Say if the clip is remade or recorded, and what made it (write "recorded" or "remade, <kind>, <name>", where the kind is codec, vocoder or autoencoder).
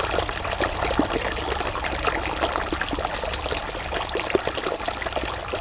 recorded